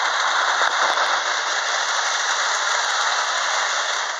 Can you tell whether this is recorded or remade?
remade